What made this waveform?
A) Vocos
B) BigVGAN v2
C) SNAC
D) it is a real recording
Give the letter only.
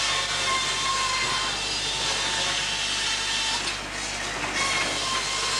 D